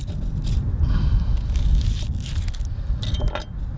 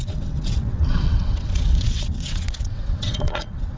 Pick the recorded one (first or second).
first